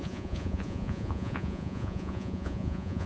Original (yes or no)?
no